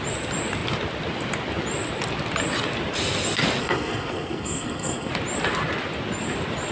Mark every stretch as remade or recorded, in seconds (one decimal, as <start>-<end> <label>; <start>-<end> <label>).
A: 0.0-3.6 recorded; 3.6-5.1 remade; 5.1-6.7 recorded